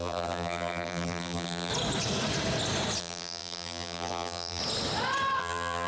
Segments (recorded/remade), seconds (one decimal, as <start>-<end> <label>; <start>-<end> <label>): 0.0-1.7 remade; 1.7-3.0 recorded; 3.0-4.6 remade; 4.6-5.4 recorded; 5.4-5.9 remade